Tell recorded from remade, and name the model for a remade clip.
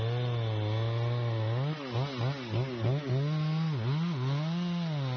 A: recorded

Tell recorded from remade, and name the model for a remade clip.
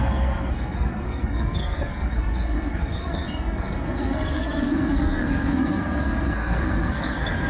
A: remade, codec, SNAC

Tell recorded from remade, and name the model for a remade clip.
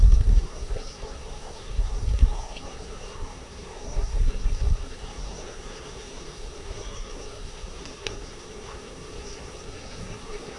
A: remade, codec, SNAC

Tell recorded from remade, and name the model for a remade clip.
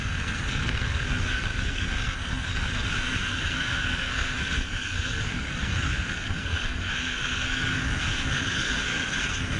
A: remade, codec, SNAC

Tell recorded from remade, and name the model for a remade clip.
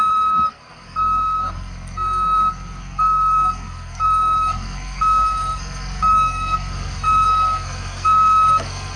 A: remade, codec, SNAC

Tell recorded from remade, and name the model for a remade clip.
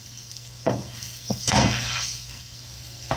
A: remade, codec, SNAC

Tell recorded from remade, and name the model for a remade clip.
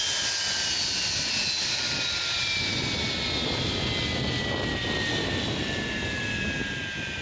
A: recorded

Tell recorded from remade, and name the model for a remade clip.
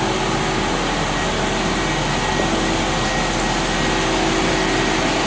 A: recorded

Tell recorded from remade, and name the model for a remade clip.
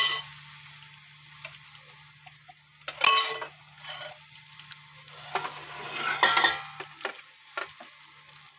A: recorded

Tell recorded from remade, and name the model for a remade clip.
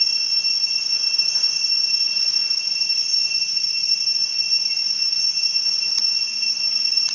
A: recorded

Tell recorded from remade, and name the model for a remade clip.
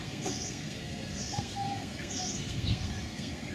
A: remade, codec, SNAC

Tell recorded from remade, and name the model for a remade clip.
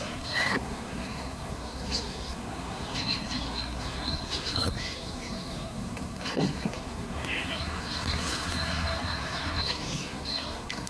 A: remade, codec, SNAC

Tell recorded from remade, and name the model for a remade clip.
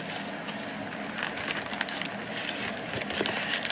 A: recorded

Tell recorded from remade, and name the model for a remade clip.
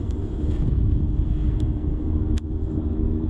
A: remade, codec, SNAC